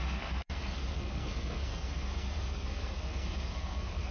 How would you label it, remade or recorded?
remade